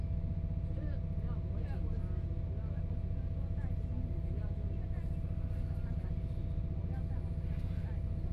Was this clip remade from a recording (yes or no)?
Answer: no